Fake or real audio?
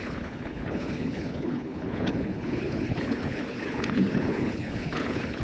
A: fake